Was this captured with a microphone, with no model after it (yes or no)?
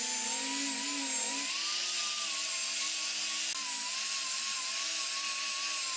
yes